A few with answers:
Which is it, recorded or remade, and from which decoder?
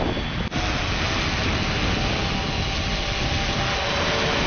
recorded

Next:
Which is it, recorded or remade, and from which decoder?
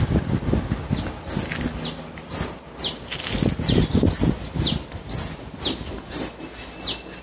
recorded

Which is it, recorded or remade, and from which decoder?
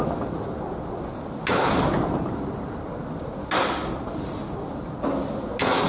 recorded